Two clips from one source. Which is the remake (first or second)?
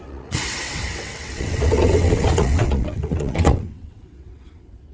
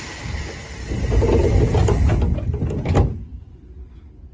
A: first